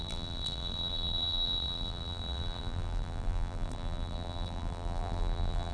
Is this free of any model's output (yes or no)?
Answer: no